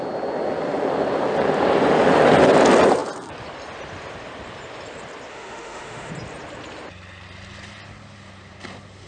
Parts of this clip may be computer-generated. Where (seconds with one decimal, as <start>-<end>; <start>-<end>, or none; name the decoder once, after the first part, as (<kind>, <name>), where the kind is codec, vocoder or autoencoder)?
5.3-6.1 (autoencoder, DAC-VAE)